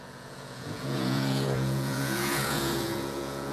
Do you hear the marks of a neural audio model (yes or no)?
yes